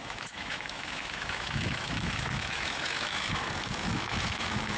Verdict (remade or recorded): remade